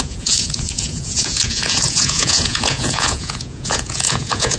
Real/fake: fake